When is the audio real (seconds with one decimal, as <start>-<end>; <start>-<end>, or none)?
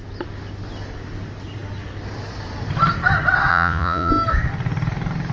0.0-3.5; 4.1-5.3